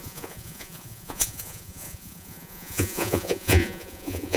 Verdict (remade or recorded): remade